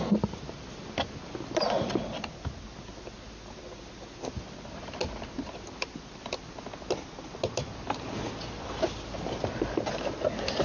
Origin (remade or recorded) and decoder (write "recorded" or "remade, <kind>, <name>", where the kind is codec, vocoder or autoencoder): recorded